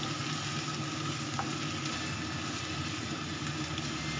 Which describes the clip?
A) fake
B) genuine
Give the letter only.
B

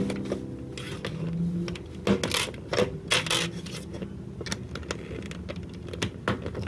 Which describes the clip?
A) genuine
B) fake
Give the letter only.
A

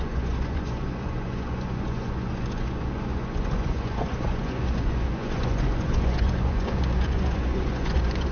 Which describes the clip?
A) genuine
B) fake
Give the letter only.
B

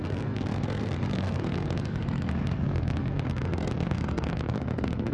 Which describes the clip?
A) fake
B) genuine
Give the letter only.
A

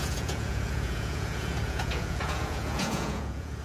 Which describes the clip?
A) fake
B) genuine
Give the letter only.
A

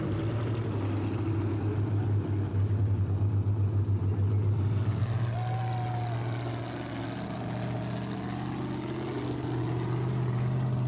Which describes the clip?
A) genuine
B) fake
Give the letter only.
A